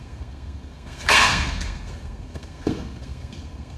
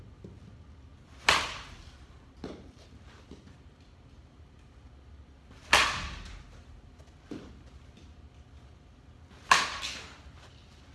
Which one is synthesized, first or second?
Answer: first